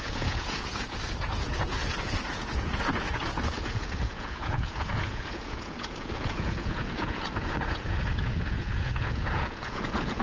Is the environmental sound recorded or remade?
remade